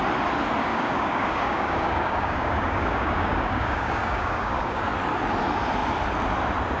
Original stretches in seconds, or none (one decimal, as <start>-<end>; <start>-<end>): 0.0-0.7; 4.8-6.8